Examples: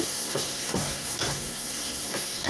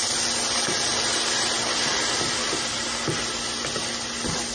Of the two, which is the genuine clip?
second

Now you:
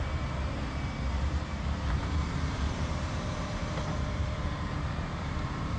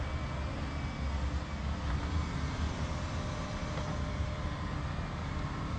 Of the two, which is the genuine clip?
second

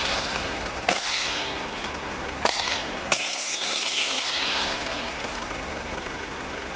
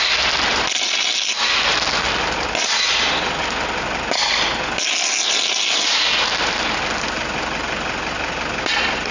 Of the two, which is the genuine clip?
second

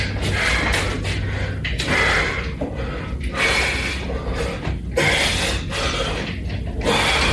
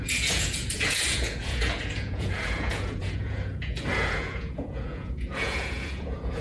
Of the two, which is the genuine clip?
first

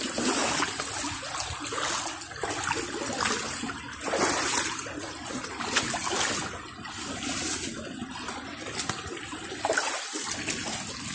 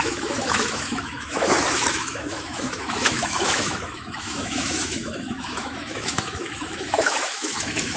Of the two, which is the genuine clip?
first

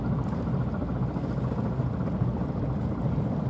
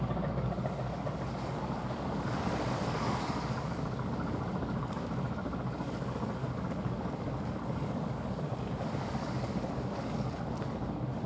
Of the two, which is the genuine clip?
first